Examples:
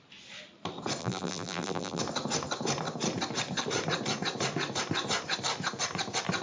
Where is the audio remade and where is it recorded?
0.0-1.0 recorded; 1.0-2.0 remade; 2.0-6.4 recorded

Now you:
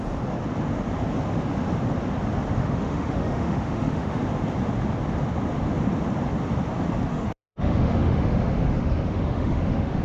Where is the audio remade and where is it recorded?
0.0-2.6 recorded; 2.6-4.2 remade; 4.2-7.1 recorded; 7.1-10.0 remade

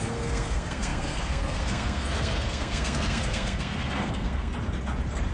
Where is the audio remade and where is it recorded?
0.0-4.5 remade; 4.5-5.3 recorded

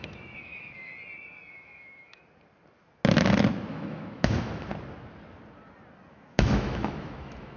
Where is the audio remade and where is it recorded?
0.0-0.9 remade; 0.9-1.5 recorded; 1.5-2.2 remade; 2.2-3.7 recorded; 3.7-4.7 remade; 4.7-6.1 recorded; 6.1-7.6 remade

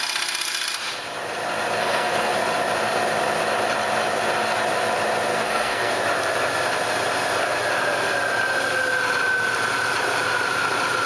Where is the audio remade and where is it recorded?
0.0-1.8 recorded; 1.8-2.3 remade; 2.3-5.3 recorded; 5.3-5.9 remade; 5.9-11.1 recorded

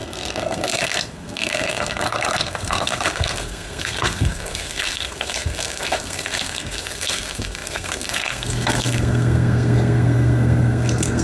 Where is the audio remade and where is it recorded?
0.0-11.2 remade

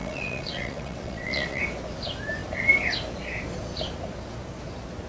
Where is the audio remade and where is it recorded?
0.0-1.6 remade; 1.6-5.1 recorded